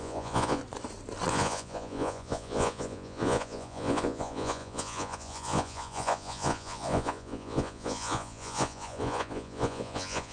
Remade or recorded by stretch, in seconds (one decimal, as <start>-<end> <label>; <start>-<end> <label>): 0.0-0.6 remade; 0.6-1.3 recorded; 1.3-10.3 remade